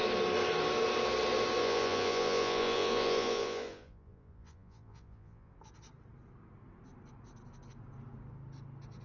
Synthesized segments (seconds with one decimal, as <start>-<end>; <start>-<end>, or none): 1.6-5.5